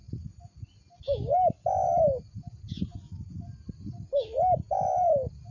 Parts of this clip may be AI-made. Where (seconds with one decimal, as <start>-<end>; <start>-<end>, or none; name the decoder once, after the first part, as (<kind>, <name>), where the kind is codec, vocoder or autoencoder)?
none